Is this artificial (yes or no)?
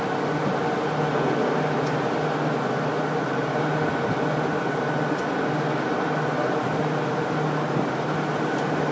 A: no